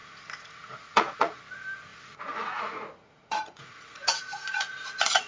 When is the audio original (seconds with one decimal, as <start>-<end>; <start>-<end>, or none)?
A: 1.4-1.9